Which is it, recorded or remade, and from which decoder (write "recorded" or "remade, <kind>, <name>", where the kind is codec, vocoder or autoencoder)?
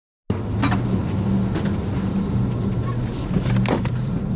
recorded